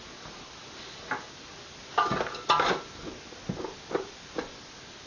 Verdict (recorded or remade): recorded